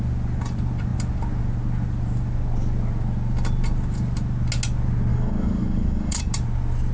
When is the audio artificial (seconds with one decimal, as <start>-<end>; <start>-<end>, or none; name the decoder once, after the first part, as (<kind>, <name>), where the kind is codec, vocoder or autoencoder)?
5.1-6.2 (codec, DAC)